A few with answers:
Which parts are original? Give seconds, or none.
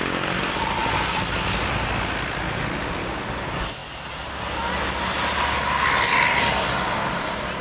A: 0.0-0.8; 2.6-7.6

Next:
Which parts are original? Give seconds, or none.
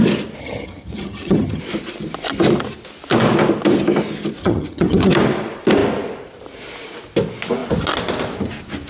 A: 0.0-0.4; 1.6-4.4; 5.1-8.9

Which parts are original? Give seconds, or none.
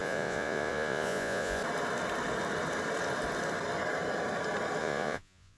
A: 1.6-4.8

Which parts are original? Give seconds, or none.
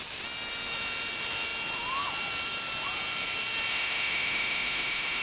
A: 0.0-3.7